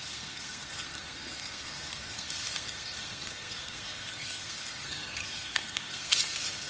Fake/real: fake